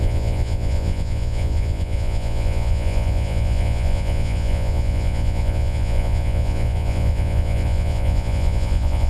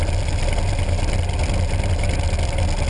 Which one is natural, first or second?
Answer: second